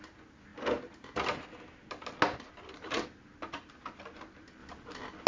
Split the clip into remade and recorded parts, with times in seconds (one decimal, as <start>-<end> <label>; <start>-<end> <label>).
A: 0.0-5.3 recorded